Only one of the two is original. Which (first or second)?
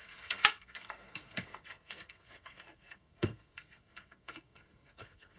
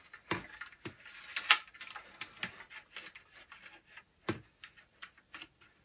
second